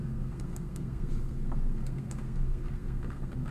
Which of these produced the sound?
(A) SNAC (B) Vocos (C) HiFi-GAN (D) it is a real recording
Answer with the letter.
A